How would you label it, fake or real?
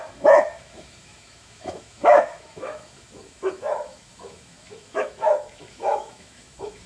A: fake